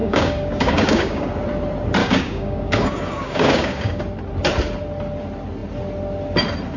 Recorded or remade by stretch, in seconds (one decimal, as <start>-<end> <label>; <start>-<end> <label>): 0.0-1.3 remade; 1.3-2.0 recorded; 2.0-4.0 remade; 4.0-6.8 recorded